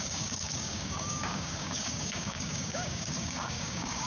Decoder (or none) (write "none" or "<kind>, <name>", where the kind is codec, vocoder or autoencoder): codec, DAC